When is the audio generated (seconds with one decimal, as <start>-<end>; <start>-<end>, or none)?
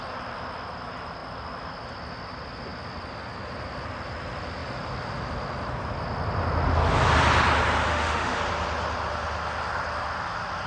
7.9-8.4